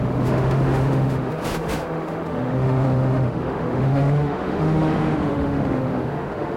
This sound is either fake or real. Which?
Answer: fake